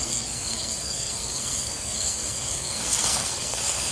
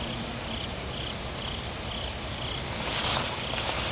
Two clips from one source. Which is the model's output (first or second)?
first